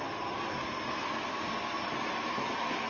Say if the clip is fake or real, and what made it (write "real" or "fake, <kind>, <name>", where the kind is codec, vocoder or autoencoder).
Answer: real